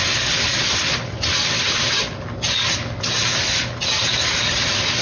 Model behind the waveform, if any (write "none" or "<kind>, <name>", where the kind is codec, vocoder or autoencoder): none